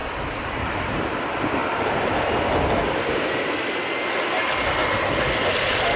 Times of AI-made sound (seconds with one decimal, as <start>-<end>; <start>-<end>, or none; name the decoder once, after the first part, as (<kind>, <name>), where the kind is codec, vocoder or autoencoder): none